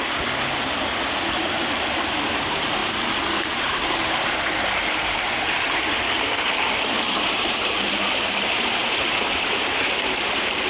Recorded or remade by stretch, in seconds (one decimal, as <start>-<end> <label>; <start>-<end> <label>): 0.0-1.4 recorded; 1.4-2.8 remade; 2.8-3.4 recorded; 3.4-10.7 remade